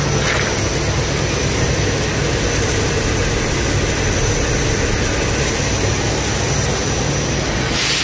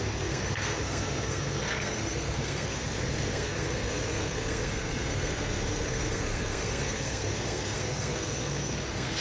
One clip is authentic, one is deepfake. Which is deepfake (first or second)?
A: second